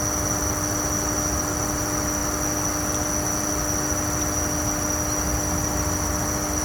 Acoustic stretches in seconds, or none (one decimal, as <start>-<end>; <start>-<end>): 0.0-6.6